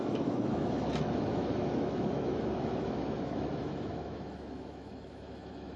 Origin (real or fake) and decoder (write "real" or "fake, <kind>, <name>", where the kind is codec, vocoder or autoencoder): fake, autoencoder, DAC-VAE